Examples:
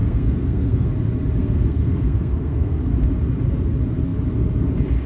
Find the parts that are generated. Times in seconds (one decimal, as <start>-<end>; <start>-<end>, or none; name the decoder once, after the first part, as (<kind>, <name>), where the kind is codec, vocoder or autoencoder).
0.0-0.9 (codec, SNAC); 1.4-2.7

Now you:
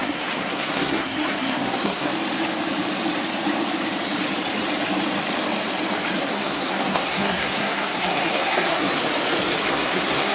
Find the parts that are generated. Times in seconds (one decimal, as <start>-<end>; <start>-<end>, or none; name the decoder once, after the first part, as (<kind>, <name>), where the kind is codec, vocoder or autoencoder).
0.0-2.1 (codec, SNAC); 6.2-9.0; 9.7-10.3

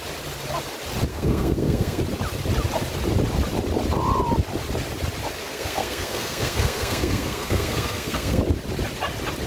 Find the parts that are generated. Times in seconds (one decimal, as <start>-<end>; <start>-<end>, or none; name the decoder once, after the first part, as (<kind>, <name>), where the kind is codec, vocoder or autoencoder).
1.1-2.0 (codec, SNAC); 5.4-8.4

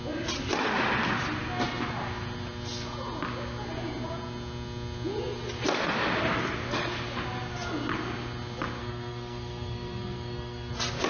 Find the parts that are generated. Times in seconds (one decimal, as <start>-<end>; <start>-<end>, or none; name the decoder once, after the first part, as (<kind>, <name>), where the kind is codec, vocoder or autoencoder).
8.8-10.7 (codec, SNAC)